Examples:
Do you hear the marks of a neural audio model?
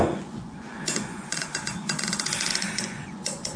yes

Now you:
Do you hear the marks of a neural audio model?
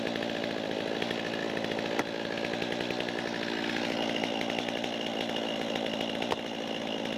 no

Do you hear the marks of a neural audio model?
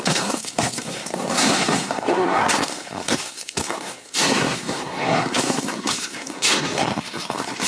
yes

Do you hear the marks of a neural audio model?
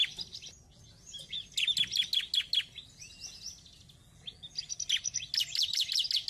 no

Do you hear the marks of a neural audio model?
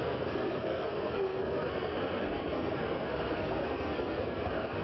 yes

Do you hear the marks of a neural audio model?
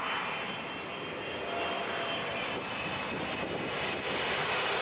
no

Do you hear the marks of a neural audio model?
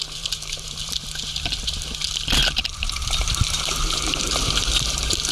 yes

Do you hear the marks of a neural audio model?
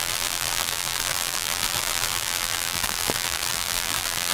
yes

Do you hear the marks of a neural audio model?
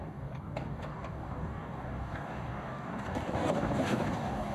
yes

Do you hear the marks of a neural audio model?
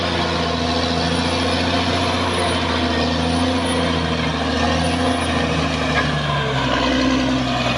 no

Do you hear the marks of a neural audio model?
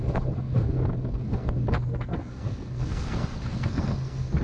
yes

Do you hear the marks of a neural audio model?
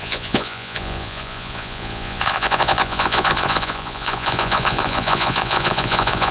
yes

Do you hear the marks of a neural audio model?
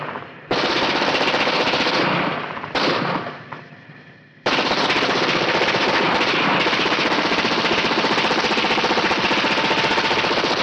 no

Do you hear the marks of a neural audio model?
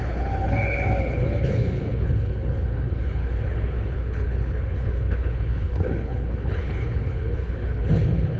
yes